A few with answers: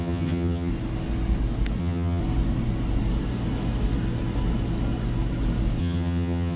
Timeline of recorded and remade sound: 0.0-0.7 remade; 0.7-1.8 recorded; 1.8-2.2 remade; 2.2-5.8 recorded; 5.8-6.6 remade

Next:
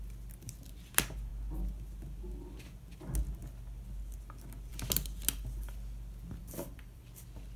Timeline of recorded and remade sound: 0.0-6.4 recorded; 6.4-7.0 remade; 7.0-7.6 recorded

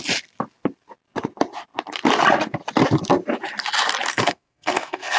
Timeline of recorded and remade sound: 0.0-4.1 recorded; 4.1-5.2 remade